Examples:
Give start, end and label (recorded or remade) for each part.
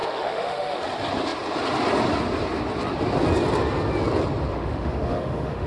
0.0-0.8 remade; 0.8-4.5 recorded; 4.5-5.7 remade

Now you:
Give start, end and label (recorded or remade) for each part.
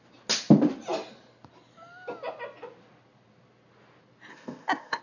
0.0-4.3 recorded; 4.3-5.0 remade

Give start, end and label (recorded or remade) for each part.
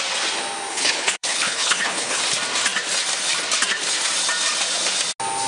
0.0-0.7 recorded; 0.7-2.2 remade; 2.2-5.5 recorded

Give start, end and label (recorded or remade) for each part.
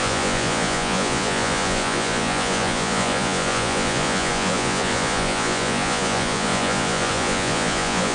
0.0-8.1 remade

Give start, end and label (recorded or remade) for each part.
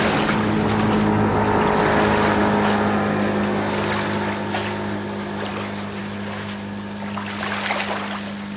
0.0-8.6 recorded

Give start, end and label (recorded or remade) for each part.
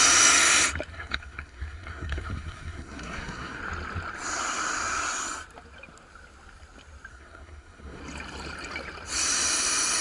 0.0-0.9 recorded; 0.9-3.6 remade; 3.6-7.1 recorded; 7.1-8.0 remade; 8.0-10.0 recorded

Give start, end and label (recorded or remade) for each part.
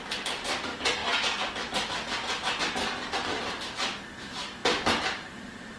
0.0-5.8 recorded